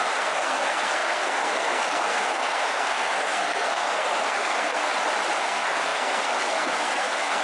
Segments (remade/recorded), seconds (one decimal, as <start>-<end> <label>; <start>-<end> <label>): 0.0-4.9 remade; 4.9-5.4 recorded; 5.4-7.4 remade